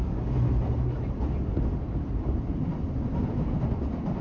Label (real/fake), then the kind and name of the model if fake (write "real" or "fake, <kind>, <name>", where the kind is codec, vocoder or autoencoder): real